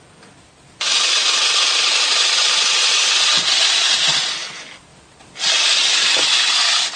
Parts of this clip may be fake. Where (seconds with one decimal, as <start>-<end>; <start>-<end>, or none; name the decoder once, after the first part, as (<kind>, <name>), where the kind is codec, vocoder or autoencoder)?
none